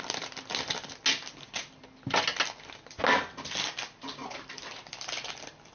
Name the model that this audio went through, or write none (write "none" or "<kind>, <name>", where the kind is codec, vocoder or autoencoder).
none